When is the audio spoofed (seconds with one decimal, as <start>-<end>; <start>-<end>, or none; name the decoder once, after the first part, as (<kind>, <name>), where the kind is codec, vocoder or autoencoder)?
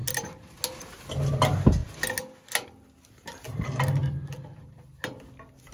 none